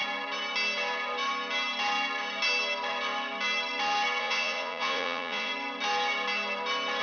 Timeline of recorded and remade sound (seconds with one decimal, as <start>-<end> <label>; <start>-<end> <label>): 0.0-4.2 recorded; 4.2-5.5 remade; 5.5-7.0 recorded